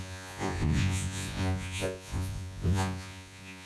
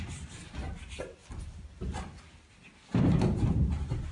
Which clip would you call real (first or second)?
second